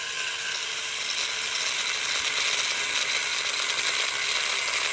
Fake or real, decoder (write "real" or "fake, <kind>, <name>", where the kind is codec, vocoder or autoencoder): real